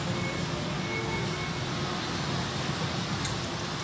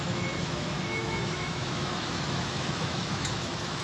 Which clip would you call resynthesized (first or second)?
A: second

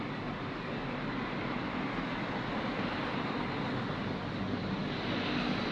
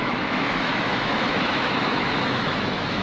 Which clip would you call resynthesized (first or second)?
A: second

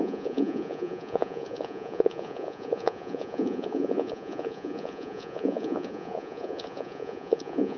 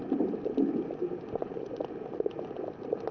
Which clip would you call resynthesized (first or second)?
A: first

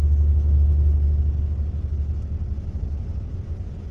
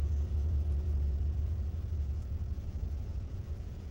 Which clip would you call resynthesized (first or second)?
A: second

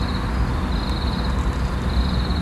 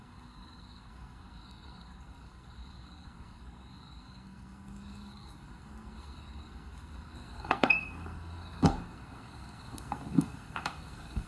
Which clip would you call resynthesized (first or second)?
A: second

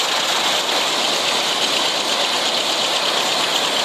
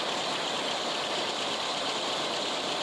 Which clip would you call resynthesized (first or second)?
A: second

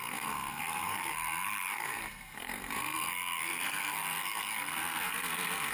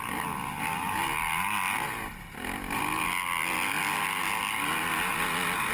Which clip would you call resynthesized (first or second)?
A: first